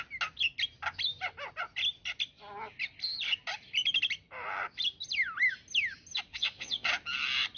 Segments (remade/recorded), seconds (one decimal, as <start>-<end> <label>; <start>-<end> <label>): 0.0-6.3 recorded; 6.3-6.9 remade; 6.9-7.6 recorded